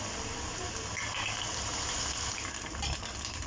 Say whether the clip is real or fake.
real